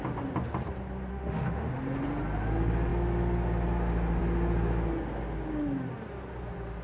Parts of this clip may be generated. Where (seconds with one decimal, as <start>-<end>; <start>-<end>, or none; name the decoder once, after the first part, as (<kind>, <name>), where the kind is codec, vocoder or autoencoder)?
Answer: 1.1-1.7 (autoencoder, DAC-VAE)